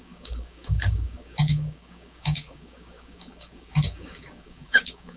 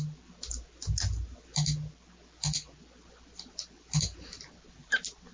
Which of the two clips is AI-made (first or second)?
first